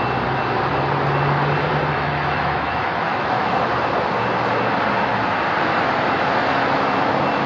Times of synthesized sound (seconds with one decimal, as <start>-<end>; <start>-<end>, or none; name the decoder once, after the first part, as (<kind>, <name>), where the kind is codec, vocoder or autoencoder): 1.9-3.6 (autoencoder, DAC-VAE)